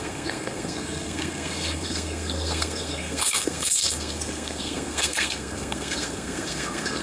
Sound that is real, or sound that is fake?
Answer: fake